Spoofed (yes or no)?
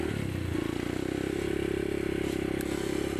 no